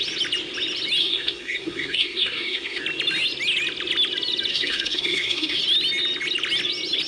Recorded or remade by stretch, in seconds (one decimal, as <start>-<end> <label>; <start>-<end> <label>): 0.0-1.0 recorded; 1.0-2.8 remade; 2.8-4.5 recorded; 4.5-5.6 remade; 5.6-7.1 recorded